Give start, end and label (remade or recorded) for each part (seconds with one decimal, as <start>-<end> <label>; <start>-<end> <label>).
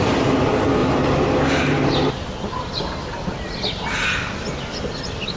0.0-5.4 recorded